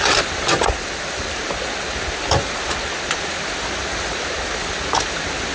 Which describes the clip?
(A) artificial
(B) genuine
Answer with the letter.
B